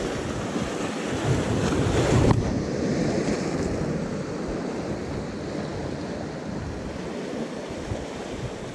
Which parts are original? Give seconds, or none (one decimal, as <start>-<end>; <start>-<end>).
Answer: 0.0-8.7

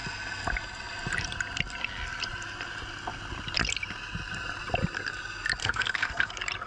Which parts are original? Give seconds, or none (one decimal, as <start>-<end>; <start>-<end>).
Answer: 0.0-5.6; 6.3-6.7

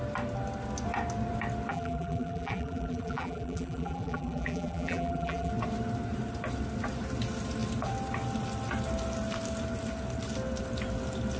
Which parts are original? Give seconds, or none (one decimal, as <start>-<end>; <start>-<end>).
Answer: 0.0-1.7; 5.5-11.4

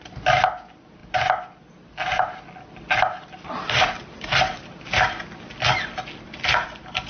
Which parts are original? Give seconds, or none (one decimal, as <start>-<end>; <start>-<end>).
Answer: 0.0-7.1

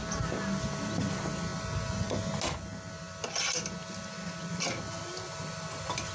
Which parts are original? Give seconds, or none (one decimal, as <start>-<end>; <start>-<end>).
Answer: 0.0-6.1